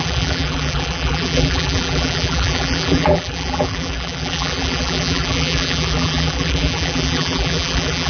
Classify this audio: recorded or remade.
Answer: remade